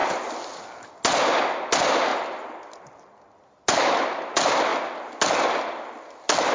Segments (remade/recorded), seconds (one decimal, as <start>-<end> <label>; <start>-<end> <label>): 0.0-6.5 recorded

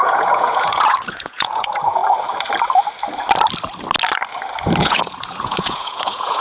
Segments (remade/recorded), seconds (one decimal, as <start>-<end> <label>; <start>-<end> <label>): 0.0-2.0 remade; 2.0-4.8 recorded; 4.8-6.4 remade